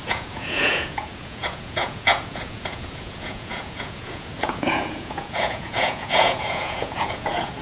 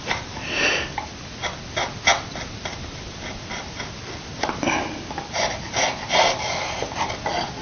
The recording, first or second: second